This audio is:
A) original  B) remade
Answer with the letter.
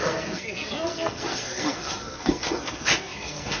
B